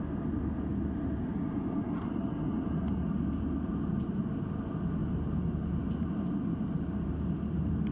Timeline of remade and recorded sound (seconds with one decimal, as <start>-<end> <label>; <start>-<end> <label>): 0.0-7.9 recorded